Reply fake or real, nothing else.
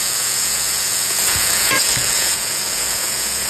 fake